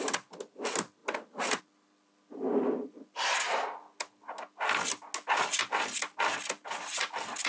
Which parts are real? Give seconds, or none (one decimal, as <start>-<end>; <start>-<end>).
0.0-7.5